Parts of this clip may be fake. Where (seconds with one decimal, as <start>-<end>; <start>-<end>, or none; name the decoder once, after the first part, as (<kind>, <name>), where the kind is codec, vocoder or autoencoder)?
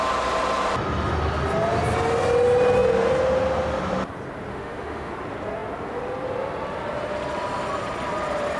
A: 4.5-5.1 (autoencoder, DAC-VAE)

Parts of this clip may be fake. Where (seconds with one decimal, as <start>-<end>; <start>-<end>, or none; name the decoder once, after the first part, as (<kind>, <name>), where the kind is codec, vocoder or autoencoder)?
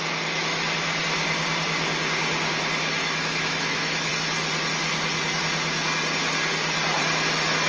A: 3.0-4.1 (autoencoder, DAC-VAE)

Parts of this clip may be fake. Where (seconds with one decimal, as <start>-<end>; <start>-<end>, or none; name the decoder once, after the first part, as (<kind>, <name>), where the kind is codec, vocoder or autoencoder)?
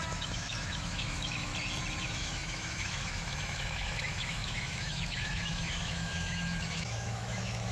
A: 0.0-1.5 (autoencoder, DAC-VAE); 2.0-7.7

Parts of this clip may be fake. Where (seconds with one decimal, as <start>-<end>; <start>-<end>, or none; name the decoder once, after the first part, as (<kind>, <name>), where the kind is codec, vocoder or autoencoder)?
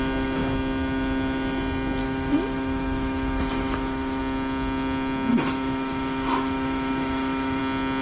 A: 2.0-4.2 (autoencoder, DAC-VAE); 5.3-7.6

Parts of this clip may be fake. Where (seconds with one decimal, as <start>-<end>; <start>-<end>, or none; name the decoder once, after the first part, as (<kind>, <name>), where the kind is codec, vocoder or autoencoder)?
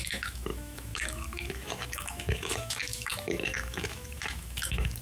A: 0.0-5.0 (autoencoder, DAC-VAE)